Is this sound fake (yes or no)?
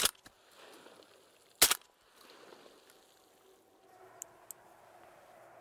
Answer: no